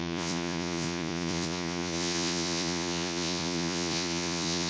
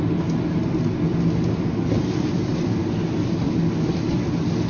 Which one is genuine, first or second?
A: second